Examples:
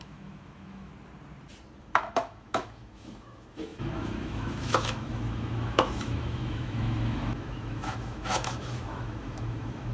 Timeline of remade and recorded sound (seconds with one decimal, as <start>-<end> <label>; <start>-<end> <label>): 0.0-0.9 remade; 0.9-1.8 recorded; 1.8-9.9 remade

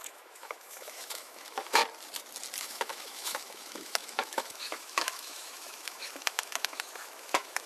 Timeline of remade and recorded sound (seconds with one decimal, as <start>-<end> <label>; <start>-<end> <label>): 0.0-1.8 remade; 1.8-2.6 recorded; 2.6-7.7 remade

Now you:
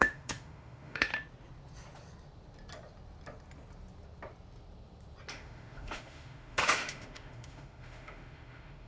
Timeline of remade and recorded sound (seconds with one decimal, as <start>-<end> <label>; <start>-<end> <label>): 0.0-1.1 remade; 1.1-5.3 recorded; 5.3-8.9 remade

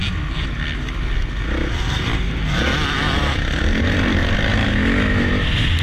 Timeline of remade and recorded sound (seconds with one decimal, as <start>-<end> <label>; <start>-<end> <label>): 0.0-4.6 recorded; 4.6-5.3 remade; 5.3-5.8 recorded

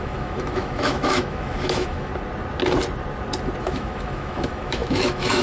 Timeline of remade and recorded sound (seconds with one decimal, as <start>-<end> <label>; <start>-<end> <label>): 0.0-2.1 remade; 2.1-3.6 recorded; 3.6-5.4 remade

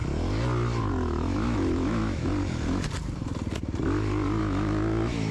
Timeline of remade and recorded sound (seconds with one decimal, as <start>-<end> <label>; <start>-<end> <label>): 0.0-0.9 recorded; 0.9-2.3 remade; 2.3-4.4 recorded; 4.4-5.3 remade

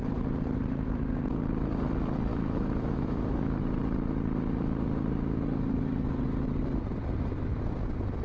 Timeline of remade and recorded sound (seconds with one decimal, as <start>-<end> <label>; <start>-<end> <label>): 0.0-2.3 recorded; 2.3-3.6 remade; 3.6-8.2 recorded

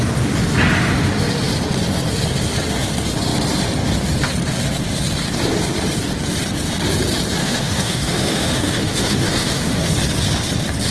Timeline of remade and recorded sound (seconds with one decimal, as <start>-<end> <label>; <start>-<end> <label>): 0.0-7.4 recorded; 7.4-9.9 remade; 9.9-10.9 recorded